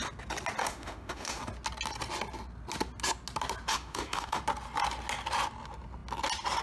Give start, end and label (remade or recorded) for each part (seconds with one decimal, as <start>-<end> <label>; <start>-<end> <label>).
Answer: 0.0-0.6 recorded; 0.6-1.4 remade; 1.4-3.7 recorded; 3.7-4.4 remade; 4.4-6.6 recorded